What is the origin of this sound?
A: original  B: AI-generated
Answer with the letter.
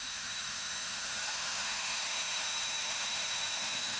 B